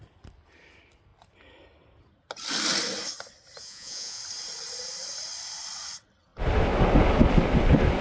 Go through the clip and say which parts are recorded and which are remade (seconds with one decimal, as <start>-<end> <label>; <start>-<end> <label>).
0.0-3.6 recorded; 3.6-4.2 remade; 4.2-8.0 recorded